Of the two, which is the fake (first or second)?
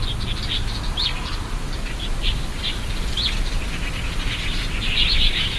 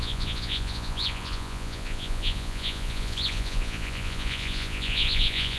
second